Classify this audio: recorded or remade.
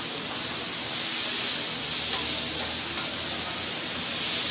recorded